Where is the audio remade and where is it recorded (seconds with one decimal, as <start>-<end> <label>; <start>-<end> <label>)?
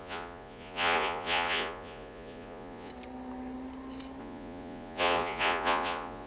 0.0-2.9 remade; 2.9-4.2 recorded; 4.2-6.3 remade